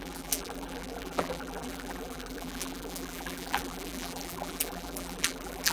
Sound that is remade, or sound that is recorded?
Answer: remade